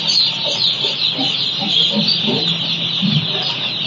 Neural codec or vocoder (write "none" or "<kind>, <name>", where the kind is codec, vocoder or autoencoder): none